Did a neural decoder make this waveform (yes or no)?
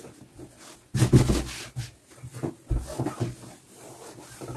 no